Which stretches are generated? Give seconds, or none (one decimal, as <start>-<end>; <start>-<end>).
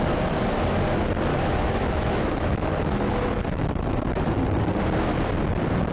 1.3-4.4